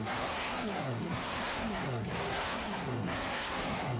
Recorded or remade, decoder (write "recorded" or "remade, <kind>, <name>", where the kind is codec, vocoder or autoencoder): remade, codec, SNAC